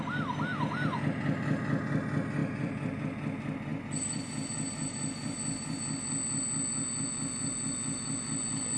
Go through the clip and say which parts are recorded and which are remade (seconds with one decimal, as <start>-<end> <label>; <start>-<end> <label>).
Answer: 0.0-2.4 recorded; 2.4-3.0 remade; 3.0-3.7 recorded; 3.7-5.8 remade; 5.8-8.8 recorded